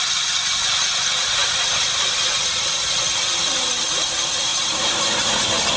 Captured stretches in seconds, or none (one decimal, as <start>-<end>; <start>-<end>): 0.0-1.4; 2.0-4.5; 5.3-5.8